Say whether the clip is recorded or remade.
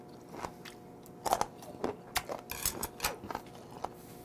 recorded